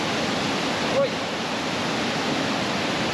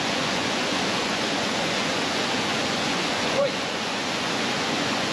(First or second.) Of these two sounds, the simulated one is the second